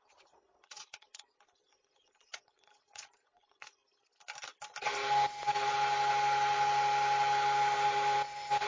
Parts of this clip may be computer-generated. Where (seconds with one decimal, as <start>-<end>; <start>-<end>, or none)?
0.0-3.8